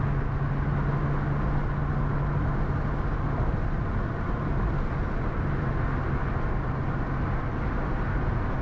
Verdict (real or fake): real